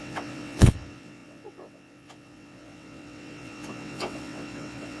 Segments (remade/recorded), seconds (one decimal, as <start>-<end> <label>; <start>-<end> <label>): 0.0-5.0 remade